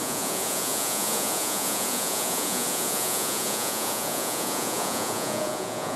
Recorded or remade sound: remade